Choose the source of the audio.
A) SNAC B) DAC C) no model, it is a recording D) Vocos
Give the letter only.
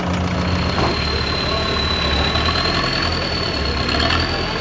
C